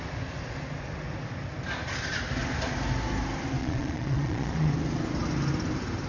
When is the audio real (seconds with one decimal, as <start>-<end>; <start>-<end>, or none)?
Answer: 0.0-3.6; 4.7-6.1